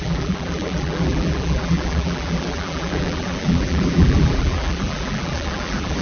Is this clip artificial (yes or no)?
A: yes